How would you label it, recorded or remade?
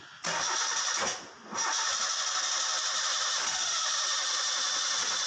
recorded